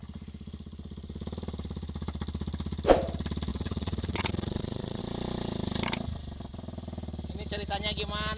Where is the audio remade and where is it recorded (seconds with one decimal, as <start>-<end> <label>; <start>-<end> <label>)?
0.0-3.5 recorded; 3.5-5.0 remade; 5.0-8.4 recorded